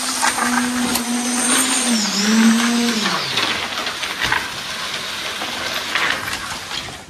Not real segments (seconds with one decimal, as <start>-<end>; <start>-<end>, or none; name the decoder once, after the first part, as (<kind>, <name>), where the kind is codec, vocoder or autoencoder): none